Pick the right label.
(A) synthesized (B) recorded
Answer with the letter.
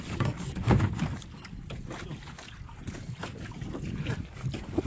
B